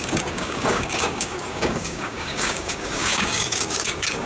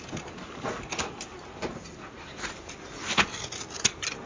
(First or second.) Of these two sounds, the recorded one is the second